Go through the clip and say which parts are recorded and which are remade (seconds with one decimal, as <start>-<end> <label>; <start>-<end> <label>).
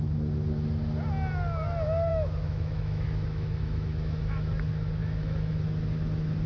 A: 0.0-2.1 recorded; 2.1-4.5 remade; 4.5-5.0 recorded; 5.0-5.6 remade; 5.6-6.5 recorded